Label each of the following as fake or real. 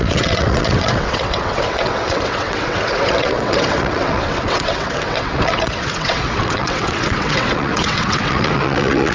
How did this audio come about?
fake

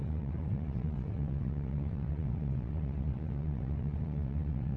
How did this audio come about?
fake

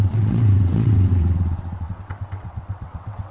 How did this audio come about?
fake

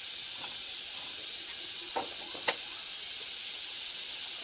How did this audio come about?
fake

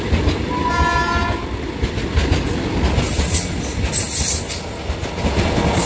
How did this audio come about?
real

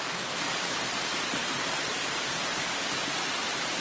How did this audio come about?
real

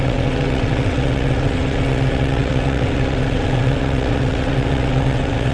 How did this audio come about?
fake